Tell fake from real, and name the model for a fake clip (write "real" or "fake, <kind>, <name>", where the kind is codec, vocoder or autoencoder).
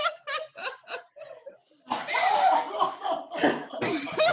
real